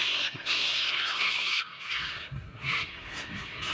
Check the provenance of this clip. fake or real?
fake